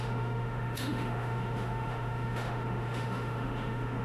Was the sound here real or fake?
fake